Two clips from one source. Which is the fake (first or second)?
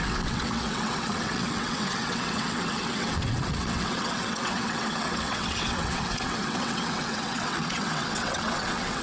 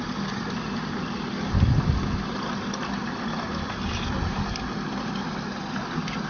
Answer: first